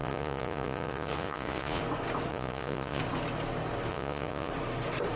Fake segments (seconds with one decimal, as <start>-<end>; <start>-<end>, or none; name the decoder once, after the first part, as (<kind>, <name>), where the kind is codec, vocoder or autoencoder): 0.0-1.8 (vocoder, Vocos); 2.3-3.0; 3.9-4.5